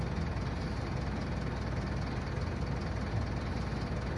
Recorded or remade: recorded